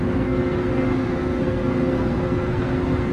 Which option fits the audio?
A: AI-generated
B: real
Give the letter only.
A